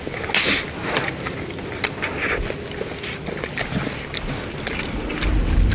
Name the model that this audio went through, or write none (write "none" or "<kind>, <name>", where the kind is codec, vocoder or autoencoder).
none